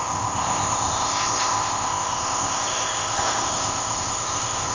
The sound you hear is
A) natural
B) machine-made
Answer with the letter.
B